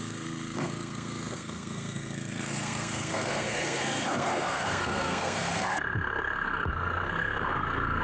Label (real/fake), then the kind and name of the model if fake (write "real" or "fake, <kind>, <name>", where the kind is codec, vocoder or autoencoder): fake, codec, SNAC